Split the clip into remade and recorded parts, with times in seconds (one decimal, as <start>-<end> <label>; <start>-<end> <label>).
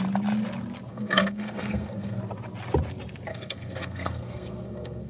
0.0-0.9 recorded; 0.9-2.2 remade; 2.2-3.3 recorded; 3.3-5.1 remade